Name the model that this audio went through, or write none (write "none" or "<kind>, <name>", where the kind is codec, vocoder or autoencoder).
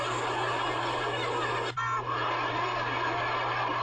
none